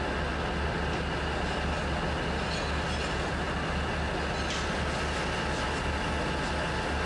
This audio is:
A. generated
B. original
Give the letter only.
B